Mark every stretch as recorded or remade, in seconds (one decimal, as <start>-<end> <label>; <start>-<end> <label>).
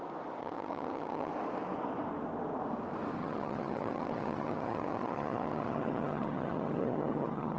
0.0-0.4 recorded; 0.4-1.3 remade; 1.3-3.2 recorded; 3.2-7.6 remade